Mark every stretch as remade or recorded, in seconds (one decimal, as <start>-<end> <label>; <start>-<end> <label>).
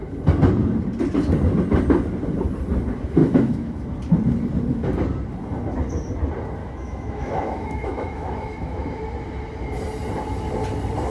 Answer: 0.0-3.2 recorded; 3.2-3.8 remade; 3.8-6.6 recorded; 6.6-9.0 remade; 9.0-11.1 recorded